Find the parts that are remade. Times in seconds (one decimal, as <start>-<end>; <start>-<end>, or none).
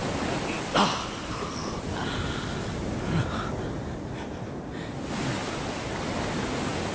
none